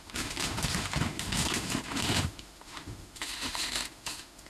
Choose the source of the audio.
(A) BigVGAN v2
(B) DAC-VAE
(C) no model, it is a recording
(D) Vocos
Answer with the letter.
B